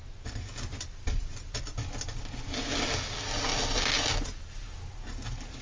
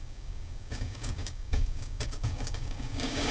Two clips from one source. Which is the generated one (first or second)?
second